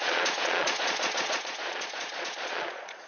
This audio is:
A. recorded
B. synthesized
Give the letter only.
B